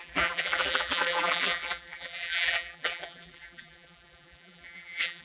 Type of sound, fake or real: fake